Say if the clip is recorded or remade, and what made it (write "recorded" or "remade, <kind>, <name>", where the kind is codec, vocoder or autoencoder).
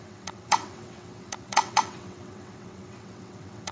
remade, vocoder, WaveNeXt